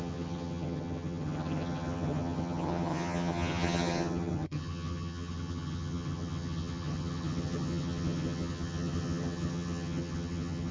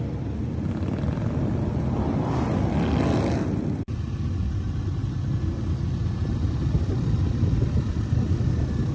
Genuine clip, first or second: second